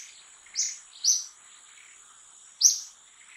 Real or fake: real